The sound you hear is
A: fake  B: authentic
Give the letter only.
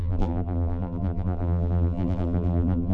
A